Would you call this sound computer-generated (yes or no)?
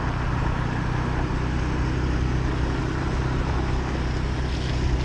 no